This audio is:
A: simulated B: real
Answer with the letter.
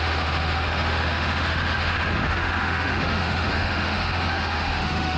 A